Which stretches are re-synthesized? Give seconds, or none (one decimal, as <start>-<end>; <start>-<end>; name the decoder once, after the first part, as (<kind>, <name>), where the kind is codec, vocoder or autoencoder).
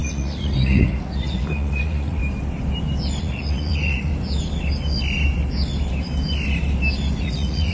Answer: 0.0-2.2 (vocoder, Vocos); 3.2-4.1; 7.2-7.7